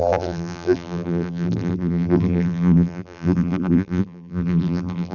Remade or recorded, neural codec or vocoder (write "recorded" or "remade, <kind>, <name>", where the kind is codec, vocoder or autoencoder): remade, vocoder, BigVGAN v2